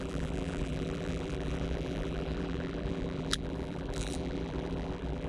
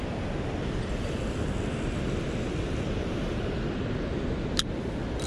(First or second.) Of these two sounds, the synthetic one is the first